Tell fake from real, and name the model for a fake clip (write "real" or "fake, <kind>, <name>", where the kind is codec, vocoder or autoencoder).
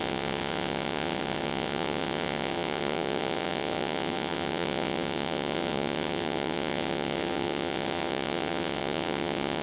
fake, vocoder, WaveNeXt